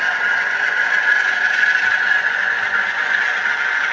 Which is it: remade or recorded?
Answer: remade